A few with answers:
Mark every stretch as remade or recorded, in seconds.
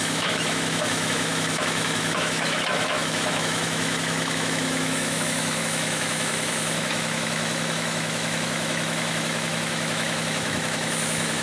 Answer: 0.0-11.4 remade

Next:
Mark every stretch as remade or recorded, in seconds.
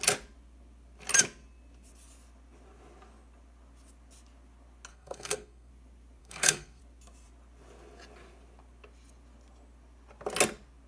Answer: 0.0-4.9 recorded; 4.9-5.7 remade; 5.7-6.2 recorded; 6.2-6.8 remade; 6.8-10.9 recorded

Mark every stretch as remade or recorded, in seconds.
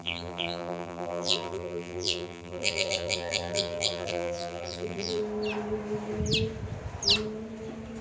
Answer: 0.0-5.2 remade; 5.2-8.0 recorded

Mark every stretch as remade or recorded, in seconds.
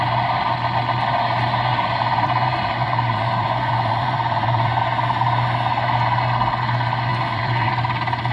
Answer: 0.0-1.7 recorded; 1.7-4.8 remade; 4.8-7.1 recorded; 7.1-7.7 remade; 7.7-8.3 recorded